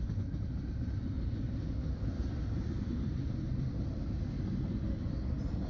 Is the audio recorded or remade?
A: recorded